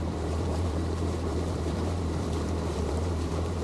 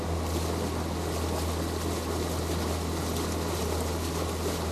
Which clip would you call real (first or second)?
second